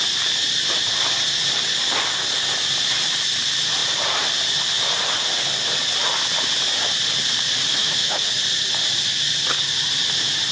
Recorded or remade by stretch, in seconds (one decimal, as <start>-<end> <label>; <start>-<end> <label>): 0.0-7.7 recorded; 7.7-8.3 remade; 8.3-10.5 recorded